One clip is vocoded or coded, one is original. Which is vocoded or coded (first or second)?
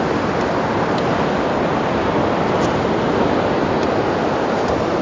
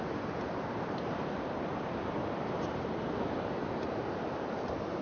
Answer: second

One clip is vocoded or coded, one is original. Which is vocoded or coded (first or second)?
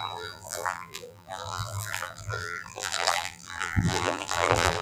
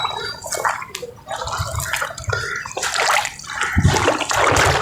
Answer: first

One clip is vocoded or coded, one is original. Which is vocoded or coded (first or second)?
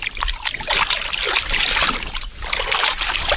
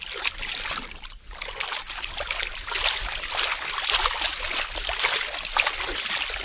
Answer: first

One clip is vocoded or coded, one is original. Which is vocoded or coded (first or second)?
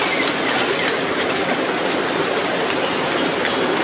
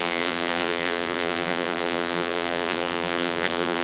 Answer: second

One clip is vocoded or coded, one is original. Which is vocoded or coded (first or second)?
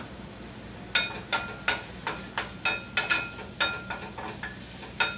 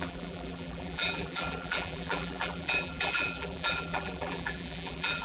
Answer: second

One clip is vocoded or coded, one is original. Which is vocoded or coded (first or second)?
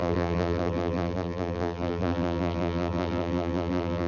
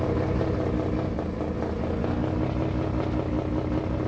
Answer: first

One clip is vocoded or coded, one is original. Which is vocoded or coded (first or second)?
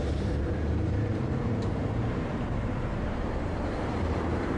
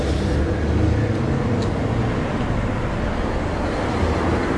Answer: first